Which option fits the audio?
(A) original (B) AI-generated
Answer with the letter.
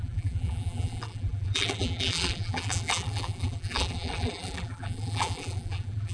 B